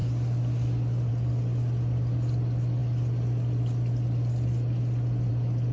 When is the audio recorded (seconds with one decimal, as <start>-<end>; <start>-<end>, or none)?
0.0-5.7